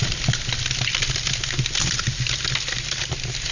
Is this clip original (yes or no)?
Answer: yes